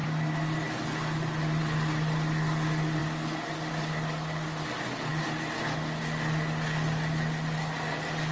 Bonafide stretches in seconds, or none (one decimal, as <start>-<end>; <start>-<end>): 0.0-8.3